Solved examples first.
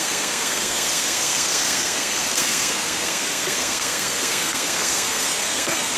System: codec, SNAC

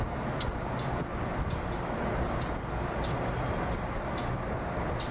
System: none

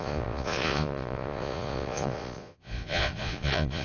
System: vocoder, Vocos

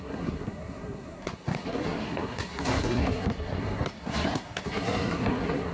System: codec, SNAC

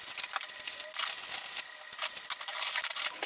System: none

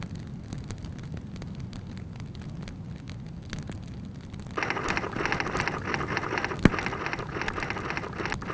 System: none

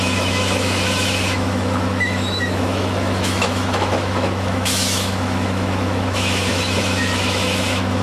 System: autoencoder, DAC-VAE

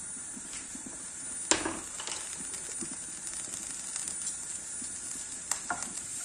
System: none